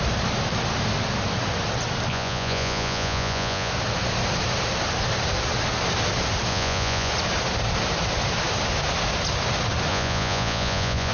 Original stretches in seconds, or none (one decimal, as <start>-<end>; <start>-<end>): 0.0-2.1; 3.7-6.5; 7.1-9.9